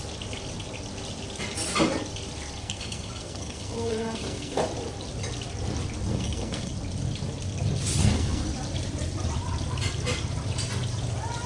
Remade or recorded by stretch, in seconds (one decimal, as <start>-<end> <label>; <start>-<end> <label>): 0.0-2.6 recorded; 2.6-4.6 remade; 4.6-6.1 recorded; 6.1-6.7 remade; 6.7-8.0 recorded; 8.0-8.5 remade; 8.5-11.5 recorded